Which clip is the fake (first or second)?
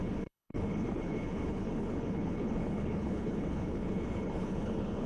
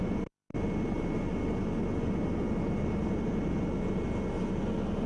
first